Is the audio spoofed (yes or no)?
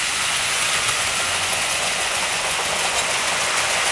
yes